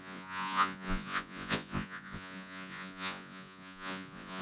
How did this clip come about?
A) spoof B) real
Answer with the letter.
A